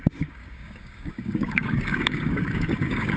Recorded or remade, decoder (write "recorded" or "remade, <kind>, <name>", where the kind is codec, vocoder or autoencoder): remade, codec, DAC